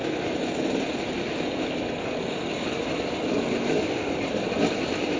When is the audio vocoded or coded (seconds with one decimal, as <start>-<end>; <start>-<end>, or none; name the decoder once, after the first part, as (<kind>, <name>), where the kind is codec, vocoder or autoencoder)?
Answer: none